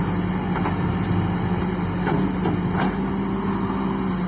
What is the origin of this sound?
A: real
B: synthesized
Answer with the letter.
A